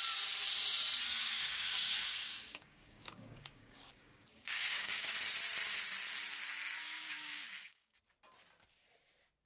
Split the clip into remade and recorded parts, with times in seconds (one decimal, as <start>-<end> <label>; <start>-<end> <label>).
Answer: 0.0-1.2 recorded; 1.2-5.1 remade; 5.1-6.8 recorded; 6.8-8.0 remade; 8.0-9.5 recorded